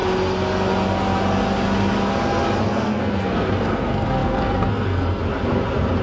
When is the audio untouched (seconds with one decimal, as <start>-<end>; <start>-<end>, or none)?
0.0-2.6; 5.2-6.0